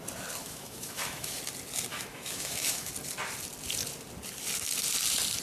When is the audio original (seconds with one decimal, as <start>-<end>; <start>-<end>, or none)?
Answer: 0.0-0.4; 1.4-1.9; 2.9-5.4